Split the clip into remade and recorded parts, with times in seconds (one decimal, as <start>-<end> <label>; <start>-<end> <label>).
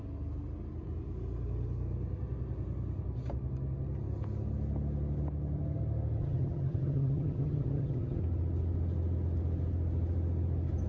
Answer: 0.0-6.2 recorded; 6.2-8.2 remade; 8.2-10.9 recorded